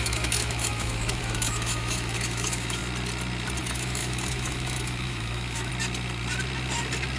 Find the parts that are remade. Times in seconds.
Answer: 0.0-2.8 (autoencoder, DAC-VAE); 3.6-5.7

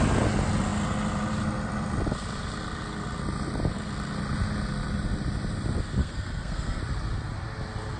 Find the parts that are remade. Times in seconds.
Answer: 6.0-6.8 (codec, SNAC)

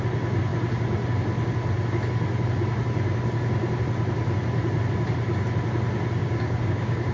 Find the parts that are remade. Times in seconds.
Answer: 6.2-7.1 (codec, DAC)

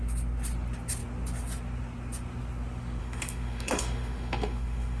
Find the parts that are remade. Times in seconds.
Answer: 3.0-5.0 (autoencoder, DAC-VAE)

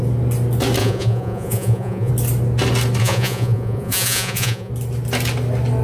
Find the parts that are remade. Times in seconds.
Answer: 0.8-2.1 (vocoder, Vocos); 3.0-4.7

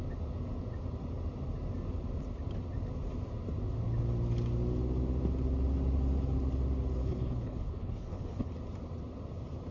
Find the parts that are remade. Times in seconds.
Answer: 7.0-8.5 (codec, HILCodec)

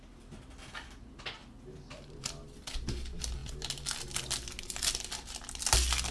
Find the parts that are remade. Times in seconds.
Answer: none